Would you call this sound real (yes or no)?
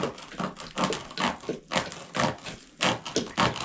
yes